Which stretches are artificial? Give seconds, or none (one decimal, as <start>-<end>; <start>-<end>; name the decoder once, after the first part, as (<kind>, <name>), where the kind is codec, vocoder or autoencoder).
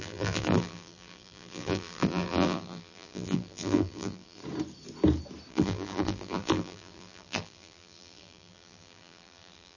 0.0-4.4 (vocoder, BigVGAN v2); 5.5-9.8